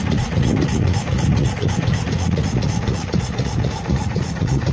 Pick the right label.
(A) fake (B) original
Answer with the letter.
A